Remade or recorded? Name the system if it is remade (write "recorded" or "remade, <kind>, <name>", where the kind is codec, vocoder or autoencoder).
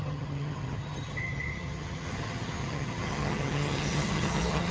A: remade, vocoder, HiFi-GAN